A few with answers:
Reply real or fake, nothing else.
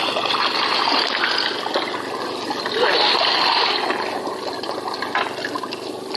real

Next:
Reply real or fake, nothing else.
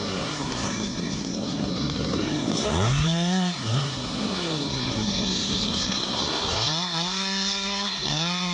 fake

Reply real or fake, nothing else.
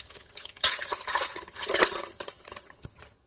fake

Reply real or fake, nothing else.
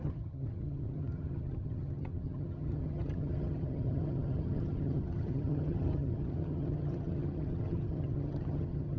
fake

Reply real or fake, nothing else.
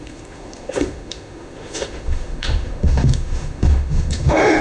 fake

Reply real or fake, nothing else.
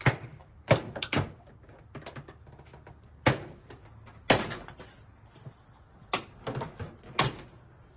real